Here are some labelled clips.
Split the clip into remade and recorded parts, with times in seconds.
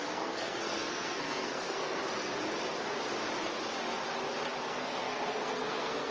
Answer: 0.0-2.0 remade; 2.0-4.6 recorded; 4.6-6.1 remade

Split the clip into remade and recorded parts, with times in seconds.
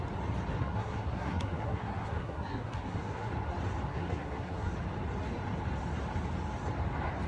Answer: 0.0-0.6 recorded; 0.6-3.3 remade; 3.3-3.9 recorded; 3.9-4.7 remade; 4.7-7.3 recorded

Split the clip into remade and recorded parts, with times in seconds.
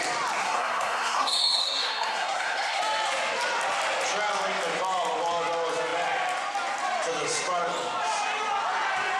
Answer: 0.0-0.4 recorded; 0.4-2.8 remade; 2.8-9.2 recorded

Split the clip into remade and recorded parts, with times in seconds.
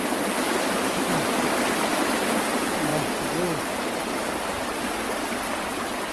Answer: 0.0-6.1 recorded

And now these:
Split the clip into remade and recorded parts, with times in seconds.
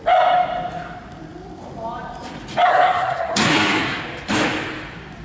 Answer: 0.0-2.7 recorded; 2.7-4.0 remade; 4.0-5.2 recorded